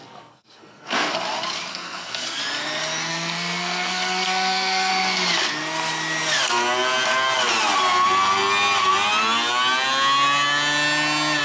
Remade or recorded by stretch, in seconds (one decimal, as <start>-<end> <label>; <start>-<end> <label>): 0.0-1.1 remade; 1.1-1.7 recorded; 1.7-2.4 remade; 2.4-3.1 recorded; 3.1-4.9 remade; 4.9-11.4 recorded